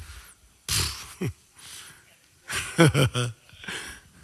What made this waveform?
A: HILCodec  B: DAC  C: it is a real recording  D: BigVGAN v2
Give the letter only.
C